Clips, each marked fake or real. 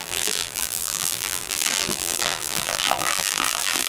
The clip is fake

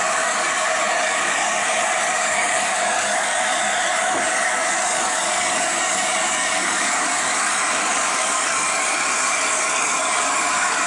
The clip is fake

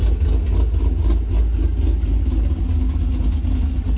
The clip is real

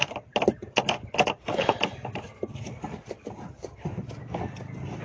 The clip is real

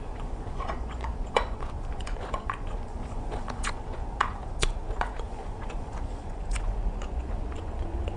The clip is fake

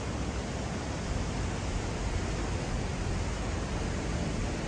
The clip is real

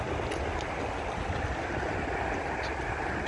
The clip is real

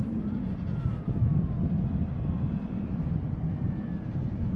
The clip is real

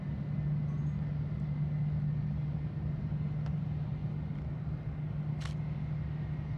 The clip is real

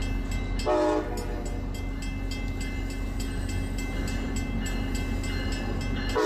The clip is real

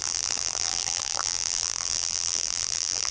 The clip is fake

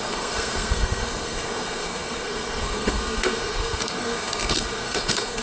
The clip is fake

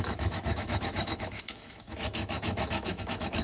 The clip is fake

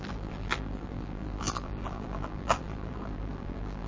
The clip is fake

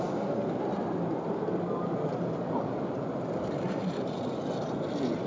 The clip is real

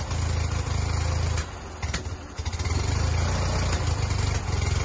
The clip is real